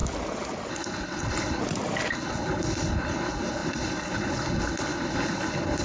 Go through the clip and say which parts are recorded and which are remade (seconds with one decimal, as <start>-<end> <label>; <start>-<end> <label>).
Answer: 0.0-0.7 recorded; 0.7-1.6 remade; 1.6-2.1 recorded; 2.1-5.8 remade